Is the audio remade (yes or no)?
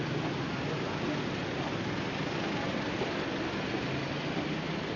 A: no